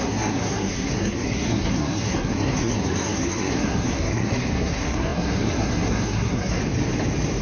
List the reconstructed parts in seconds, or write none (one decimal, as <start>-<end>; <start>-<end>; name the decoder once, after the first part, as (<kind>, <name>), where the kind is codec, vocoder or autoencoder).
0.0-6.6 (codec, SNAC)